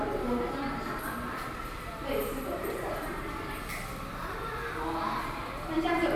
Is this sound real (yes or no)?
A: yes